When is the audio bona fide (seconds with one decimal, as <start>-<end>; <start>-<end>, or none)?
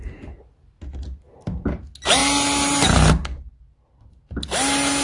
0.0-5.0